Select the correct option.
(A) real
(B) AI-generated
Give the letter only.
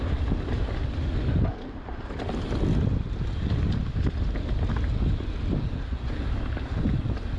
A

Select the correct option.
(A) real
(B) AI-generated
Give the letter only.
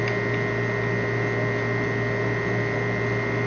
A